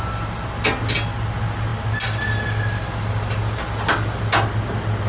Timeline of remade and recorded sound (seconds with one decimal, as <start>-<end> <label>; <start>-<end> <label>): 0.0-5.1 recorded